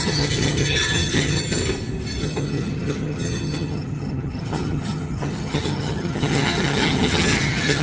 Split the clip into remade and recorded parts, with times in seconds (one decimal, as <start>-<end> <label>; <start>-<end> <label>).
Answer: 0.0-1.6 remade; 1.6-2.2 recorded; 2.2-7.8 remade